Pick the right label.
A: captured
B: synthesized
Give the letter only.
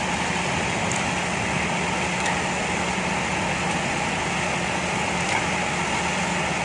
A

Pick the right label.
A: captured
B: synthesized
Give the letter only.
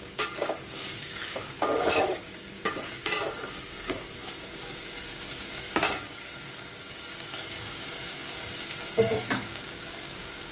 B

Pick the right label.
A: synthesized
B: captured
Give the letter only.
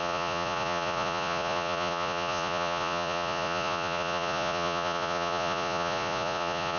A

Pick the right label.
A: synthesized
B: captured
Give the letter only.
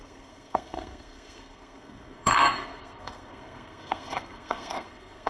A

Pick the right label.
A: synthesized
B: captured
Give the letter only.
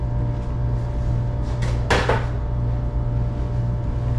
B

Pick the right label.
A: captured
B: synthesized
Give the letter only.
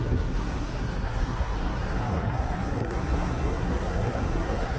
B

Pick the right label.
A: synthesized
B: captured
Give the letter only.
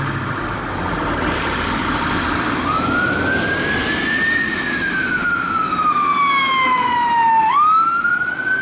B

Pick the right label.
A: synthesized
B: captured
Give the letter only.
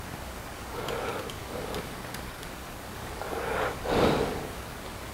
A